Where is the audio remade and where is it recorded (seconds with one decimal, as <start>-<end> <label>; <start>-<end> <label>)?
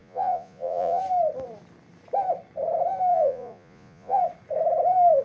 0.0-1.0 remade; 1.0-3.1 recorded; 3.1-4.2 remade; 4.2-5.2 recorded